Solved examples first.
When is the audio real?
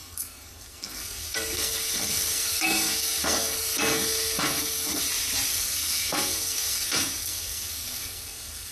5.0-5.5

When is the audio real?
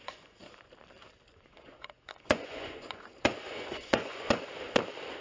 0.7-1.3; 4.4-5.2